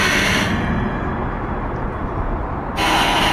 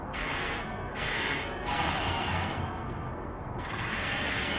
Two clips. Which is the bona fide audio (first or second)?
first